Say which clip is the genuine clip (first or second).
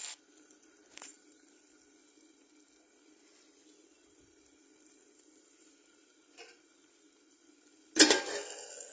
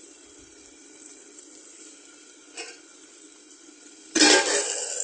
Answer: first